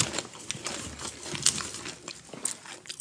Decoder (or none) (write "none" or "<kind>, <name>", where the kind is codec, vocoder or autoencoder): none